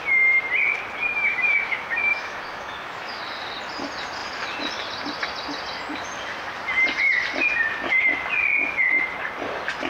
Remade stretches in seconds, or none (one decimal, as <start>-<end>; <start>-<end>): 1.1-3.2